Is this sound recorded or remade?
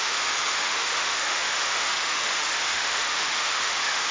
remade